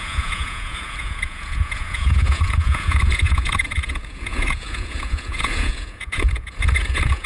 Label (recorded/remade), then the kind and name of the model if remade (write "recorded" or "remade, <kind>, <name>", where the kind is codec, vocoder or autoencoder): remade, vocoder, Vocos